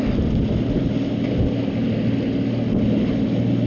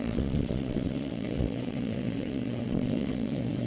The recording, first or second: first